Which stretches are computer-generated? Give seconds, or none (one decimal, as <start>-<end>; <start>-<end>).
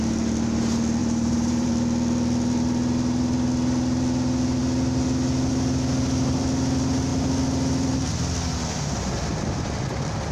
1.0-1.7